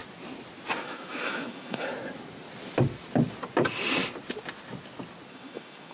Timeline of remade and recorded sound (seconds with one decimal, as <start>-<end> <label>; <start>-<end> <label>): 0.0-0.8 recorded; 0.8-1.9 remade; 1.9-5.3 recorded; 5.3-5.9 remade